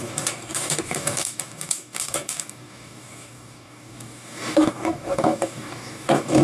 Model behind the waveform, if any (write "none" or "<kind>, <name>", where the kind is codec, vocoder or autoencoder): codec, DAC